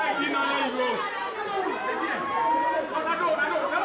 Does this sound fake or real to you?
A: real